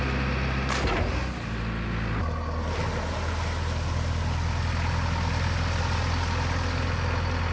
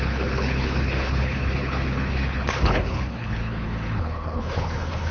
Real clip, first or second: first